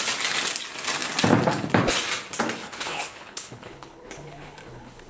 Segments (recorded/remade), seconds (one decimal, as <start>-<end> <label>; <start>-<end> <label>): 0.0-2.6 recorded; 2.6-5.1 remade